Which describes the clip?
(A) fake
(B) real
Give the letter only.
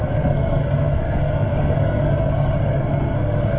A